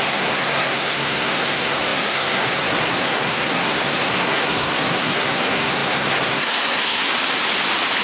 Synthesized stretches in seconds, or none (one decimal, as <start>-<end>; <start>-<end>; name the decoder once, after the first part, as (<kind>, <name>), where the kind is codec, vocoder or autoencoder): 0.0-7.0 (codec, SNAC)